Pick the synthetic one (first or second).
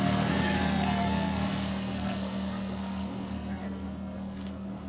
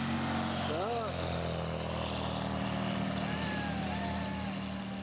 first